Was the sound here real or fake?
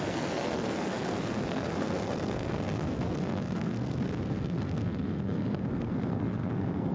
fake